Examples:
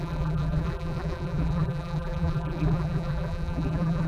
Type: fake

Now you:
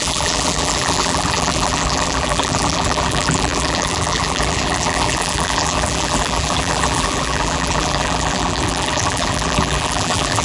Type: fake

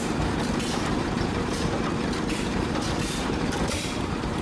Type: fake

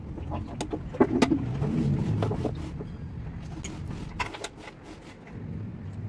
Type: real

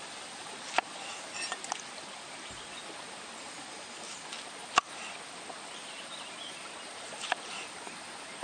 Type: real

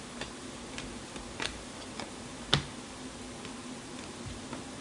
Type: real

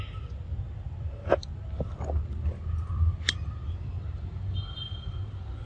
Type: real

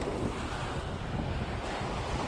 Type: real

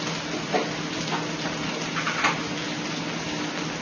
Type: real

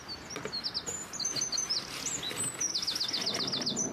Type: real